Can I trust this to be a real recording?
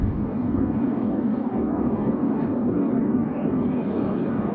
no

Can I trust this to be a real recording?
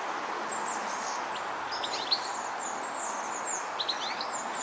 yes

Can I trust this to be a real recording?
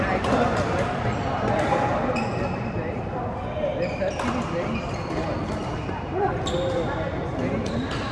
yes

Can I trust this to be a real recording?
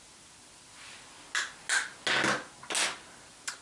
yes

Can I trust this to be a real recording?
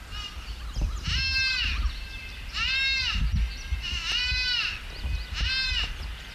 yes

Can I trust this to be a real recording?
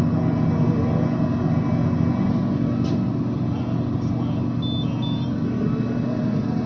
yes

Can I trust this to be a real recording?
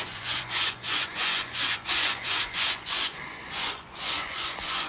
no